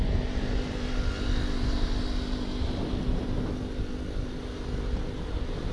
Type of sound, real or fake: real